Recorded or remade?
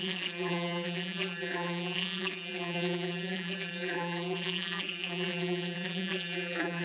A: remade